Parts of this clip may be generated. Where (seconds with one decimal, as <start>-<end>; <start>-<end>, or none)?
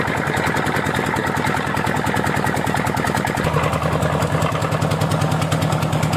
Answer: none